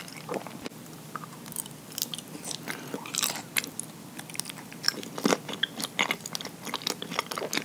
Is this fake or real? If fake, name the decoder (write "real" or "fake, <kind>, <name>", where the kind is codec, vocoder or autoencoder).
fake, vocoder, BigVGAN v2